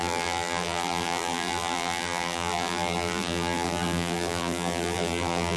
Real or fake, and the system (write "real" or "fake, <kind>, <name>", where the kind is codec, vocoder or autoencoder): fake, vocoder, BigVGAN v2